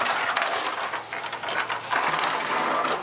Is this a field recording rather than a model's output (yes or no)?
yes